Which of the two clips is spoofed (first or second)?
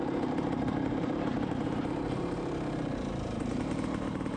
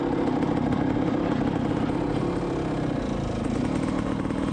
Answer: first